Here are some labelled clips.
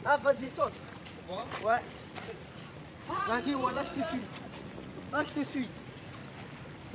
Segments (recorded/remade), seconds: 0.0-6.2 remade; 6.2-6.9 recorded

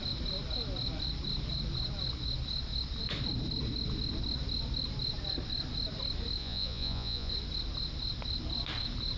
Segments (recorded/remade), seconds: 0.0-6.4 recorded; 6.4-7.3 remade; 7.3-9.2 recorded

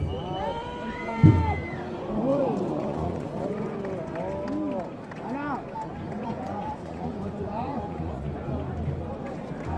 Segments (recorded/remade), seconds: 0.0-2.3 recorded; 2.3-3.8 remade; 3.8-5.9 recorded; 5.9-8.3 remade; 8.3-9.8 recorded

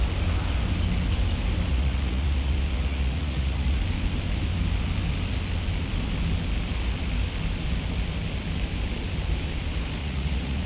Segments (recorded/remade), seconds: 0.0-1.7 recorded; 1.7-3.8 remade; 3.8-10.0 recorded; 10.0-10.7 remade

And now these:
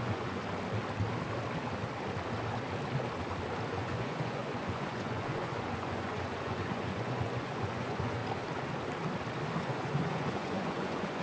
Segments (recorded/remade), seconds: 0.0-0.4 remade; 0.4-3.7 recorded; 3.7-8.2 remade; 8.2-9.6 recorded; 9.6-11.2 remade

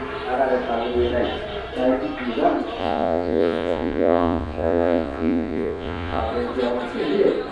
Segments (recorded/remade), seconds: 0.0-2.8 recorded; 2.8-6.2 remade; 6.2-7.5 recorded

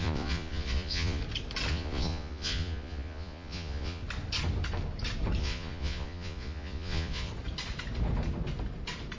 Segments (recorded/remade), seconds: 0.0-1.2 remade; 1.2-1.7 recorded; 1.7-4.0 remade; 4.0-5.4 recorded; 5.4-7.3 remade; 7.3-9.2 recorded

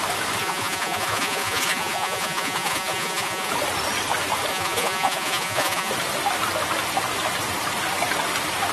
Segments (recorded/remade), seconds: 0.0-0.4 recorded; 0.4-3.5 remade; 3.5-4.5 recorded; 4.5-5.9 remade; 5.9-8.7 recorded